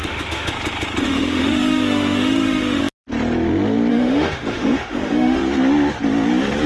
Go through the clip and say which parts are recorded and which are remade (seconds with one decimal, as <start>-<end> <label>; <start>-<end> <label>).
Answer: 0.0-0.5 remade; 0.5-1.0 recorded; 1.0-2.8 remade; 2.8-3.9 recorded; 3.9-5.4 remade; 5.4-6.7 recorded